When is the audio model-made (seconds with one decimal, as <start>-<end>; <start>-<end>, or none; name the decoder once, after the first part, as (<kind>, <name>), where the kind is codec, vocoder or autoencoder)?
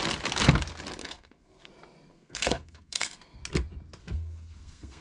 1.0-1.7 (codec, SNAC); 2.1-3.4; 4.0-5.0